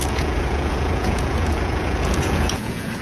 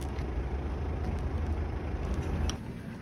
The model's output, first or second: first